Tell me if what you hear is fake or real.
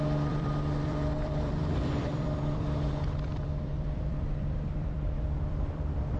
fake